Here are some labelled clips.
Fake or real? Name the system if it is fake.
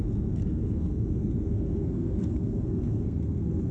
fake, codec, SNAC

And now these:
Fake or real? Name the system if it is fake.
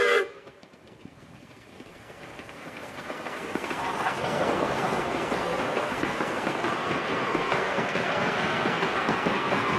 fake, codec, SNAC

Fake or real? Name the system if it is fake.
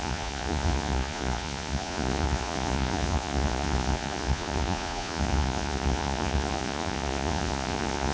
fake, vocoder, Vocos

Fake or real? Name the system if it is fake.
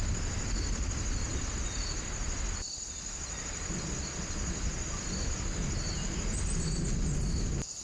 real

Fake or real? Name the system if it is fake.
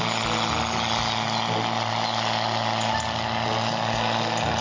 real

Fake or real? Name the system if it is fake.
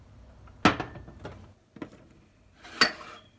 real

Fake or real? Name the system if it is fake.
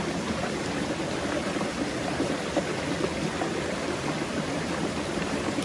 real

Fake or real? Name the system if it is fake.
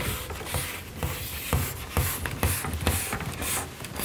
real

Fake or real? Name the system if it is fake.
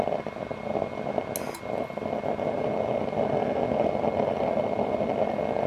real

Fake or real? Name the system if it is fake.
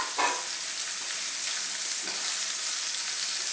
real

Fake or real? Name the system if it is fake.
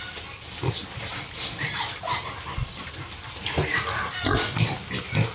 real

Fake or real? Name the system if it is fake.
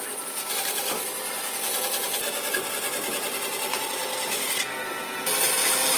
real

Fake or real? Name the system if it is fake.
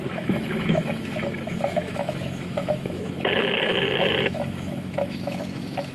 fake, autoencoder, DAC-VAE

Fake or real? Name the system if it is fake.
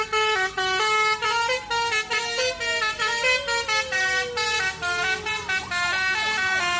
real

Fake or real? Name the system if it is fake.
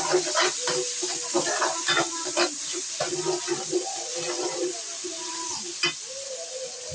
real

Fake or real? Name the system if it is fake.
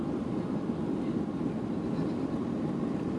real